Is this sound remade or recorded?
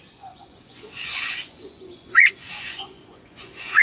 remade